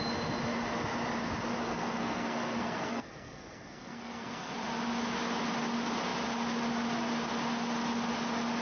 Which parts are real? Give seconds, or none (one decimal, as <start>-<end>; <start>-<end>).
0.0-1.6; 4.5-8.6